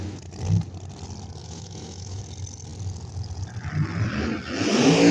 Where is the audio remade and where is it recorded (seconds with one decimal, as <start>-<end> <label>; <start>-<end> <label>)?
0.0-1.4 recorded; 1.4-2.2 remade; 2.2-5.1 recorded